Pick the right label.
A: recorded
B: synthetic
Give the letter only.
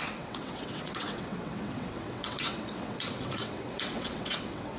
B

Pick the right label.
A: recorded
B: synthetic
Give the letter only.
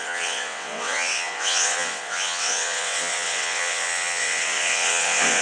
B